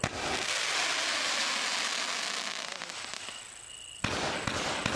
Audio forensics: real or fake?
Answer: real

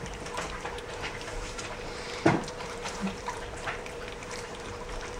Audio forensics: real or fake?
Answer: fake